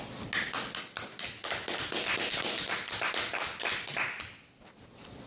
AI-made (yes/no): no